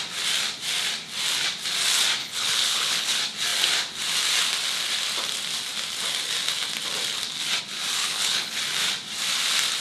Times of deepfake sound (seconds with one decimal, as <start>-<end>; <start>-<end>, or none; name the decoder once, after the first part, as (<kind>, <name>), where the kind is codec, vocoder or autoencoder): 2.2-3.1 (codec, HILCodec); 8.0-8.6